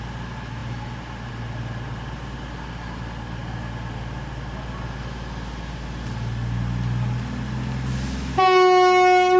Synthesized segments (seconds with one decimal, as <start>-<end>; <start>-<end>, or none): none

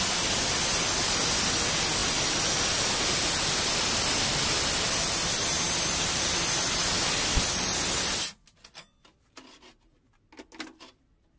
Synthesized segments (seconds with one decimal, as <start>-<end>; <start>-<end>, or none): none

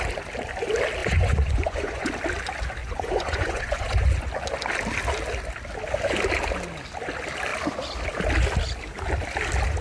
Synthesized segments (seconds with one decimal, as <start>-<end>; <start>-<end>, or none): 1.0-2.1; 2.8-4.2

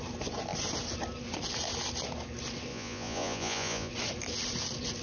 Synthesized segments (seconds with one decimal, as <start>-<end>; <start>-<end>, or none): 2.7-3.9

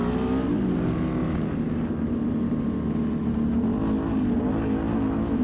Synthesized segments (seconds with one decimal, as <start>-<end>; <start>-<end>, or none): none

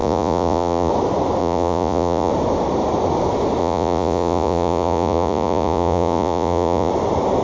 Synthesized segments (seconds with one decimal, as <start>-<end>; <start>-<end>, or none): 0.0-0.9; 1.4-2.3; 3.6-6.9